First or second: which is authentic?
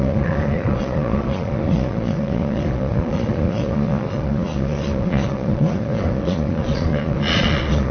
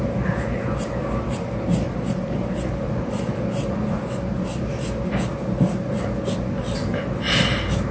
second